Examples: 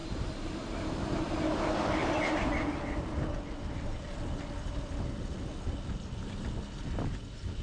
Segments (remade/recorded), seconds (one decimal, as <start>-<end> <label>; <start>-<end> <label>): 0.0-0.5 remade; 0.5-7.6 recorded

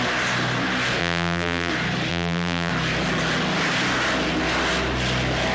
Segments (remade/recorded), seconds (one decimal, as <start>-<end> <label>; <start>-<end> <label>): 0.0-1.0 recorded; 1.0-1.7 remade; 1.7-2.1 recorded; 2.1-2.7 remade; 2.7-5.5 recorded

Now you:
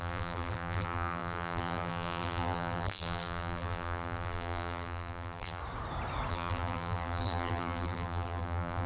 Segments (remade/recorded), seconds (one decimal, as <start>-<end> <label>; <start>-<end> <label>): 0.0-5.6 remade; 5.6-6.3 recorded; 6.3-8.9 remade